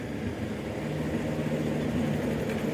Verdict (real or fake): real